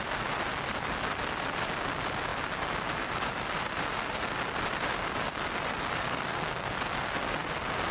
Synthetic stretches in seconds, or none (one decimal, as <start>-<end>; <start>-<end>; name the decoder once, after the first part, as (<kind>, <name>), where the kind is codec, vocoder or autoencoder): 6.0-6.8 (codec, SNAC)